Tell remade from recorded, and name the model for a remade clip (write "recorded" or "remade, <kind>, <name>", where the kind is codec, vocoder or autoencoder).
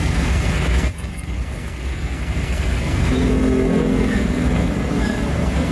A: remade, codec, SNAC